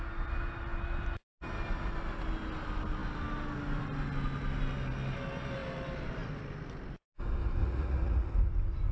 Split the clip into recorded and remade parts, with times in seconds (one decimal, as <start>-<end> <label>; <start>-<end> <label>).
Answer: 0.0-7.6 recorded; 7.6-8.3 remade; 8.3-8.9 recorded